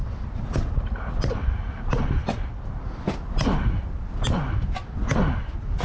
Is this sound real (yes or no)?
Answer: yes